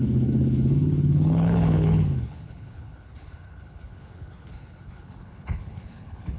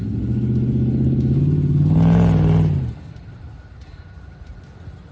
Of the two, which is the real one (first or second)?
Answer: second